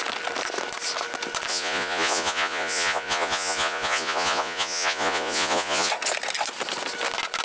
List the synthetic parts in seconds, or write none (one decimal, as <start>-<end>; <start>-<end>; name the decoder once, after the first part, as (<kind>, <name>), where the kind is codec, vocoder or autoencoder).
1.5-5.9 (vocoder, Vocos)

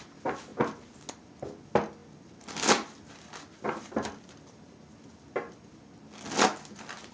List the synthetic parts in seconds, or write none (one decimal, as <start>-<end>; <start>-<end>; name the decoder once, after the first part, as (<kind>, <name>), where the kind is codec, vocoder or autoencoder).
none

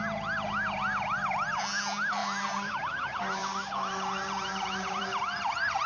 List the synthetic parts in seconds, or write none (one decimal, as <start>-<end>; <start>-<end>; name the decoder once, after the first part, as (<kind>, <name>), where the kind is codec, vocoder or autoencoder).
2.2-5.9 (vocoder, BigVGAN v2)

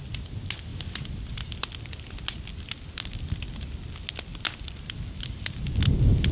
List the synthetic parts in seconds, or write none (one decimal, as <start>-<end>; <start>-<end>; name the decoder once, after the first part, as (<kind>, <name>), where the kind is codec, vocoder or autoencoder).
2.5-3.5 (vocoder, BigVGAN v2); 4.3-4.8

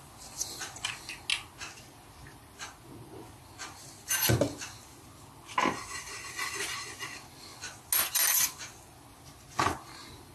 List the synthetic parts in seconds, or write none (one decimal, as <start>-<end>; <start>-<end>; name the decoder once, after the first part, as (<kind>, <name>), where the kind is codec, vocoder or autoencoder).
none

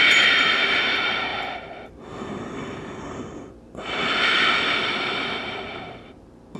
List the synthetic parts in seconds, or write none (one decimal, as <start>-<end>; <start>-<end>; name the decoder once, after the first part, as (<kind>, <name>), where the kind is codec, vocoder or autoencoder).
0.0-1.3 (vocoder, BigVGAN v2); 4.8-6.6